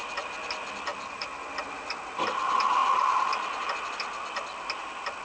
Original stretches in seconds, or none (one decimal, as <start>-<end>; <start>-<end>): 0.0-0.9; 1.6-5.2